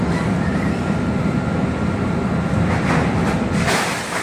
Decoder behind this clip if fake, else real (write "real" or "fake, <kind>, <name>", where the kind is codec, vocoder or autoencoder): real